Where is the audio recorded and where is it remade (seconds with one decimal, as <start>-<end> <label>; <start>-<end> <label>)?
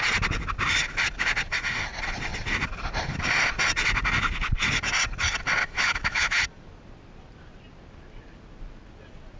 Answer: 0.0-5.6 recorded; 5.6-6.4 remade; 6.4-9.4 recorded